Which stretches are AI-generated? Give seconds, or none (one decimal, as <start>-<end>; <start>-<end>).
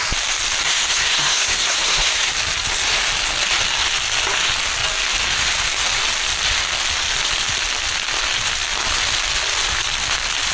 0.6-2.3